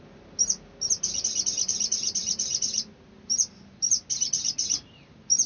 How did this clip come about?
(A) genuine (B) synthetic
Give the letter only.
A